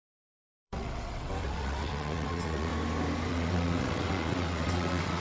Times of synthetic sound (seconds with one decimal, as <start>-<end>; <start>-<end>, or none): 0.0-2.7; 3.3-5.2